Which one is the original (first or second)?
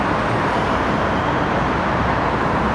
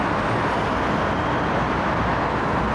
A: second